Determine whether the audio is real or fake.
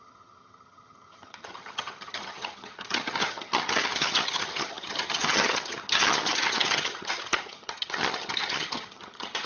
fake